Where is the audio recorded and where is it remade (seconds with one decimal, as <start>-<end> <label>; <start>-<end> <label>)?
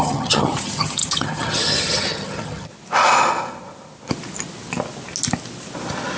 0.0-2.7 remade; 2.7-6.2 recorded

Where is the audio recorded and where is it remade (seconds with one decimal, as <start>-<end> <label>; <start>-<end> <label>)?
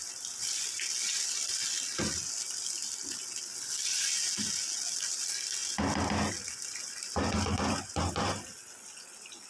0.0-9.5 recorded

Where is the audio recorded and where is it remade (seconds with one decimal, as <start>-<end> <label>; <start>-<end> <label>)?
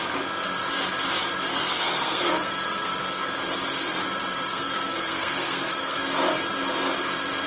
0.0-1.5 recorded; 1.5-2.9 remade; 2.9-4.5 recorded; 4.5-6.0 remade; 6.0-7.5 recorded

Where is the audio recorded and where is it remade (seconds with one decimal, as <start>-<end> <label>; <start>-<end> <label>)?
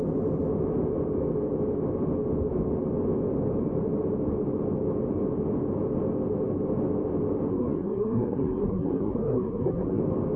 0.0-7.5 recorded; 7.5-10.0 remade; 10.0-10.4 recorded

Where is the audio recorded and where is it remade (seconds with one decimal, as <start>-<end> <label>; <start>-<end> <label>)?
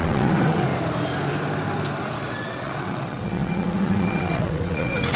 0.0-0.7 remade; 0.7-2.3 recorded; 2.3-5.2 remade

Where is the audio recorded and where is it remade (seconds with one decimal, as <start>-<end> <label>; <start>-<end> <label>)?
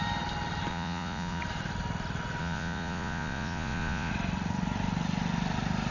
0.0-0.7 recorded; 0.7-1.4 remade; 1.4-2.4 recorded; 2.4-4.1 remade; 4.1-5.9 recorded